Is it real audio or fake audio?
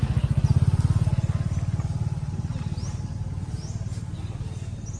real